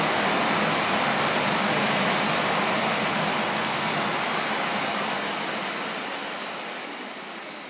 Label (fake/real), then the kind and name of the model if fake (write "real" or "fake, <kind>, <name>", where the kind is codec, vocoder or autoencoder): real